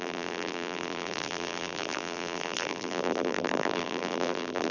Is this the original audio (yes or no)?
no